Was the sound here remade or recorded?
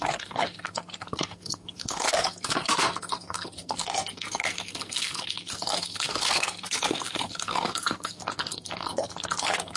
remade